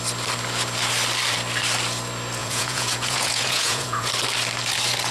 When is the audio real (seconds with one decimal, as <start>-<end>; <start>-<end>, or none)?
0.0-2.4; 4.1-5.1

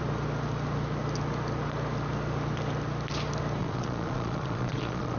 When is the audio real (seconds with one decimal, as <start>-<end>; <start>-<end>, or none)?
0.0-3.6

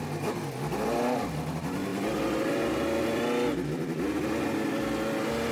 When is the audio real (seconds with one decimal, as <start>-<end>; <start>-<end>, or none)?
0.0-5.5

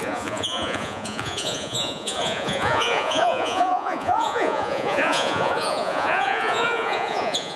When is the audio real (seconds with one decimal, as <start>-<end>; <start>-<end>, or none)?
none

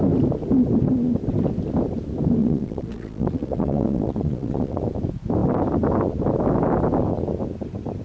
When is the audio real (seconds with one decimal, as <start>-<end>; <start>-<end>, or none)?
0.0-2.4; 4.8-8.0

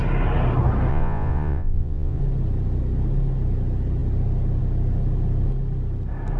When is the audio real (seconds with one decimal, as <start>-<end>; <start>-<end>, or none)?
0.0-0.9; 2.2-6.4

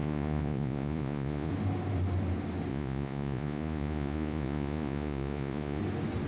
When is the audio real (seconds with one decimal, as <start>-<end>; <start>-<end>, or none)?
1.5-2.7; 5.8-6.3

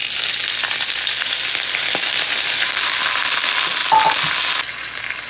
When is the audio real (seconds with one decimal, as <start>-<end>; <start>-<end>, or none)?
0.0-5.3